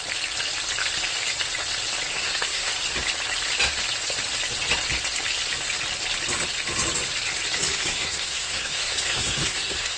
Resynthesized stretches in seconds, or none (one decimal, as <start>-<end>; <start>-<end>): 2.1-2.7; 7.8-10.0